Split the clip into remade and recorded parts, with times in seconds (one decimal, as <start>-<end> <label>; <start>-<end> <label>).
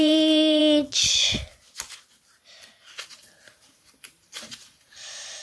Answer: 0.0-0.6 remade; 0.6-3.1 recorded; 3.1-5.4 remade